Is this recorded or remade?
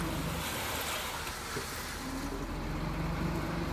recorded